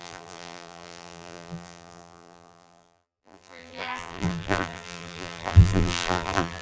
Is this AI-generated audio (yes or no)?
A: yes